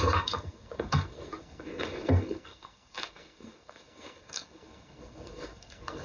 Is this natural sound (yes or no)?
no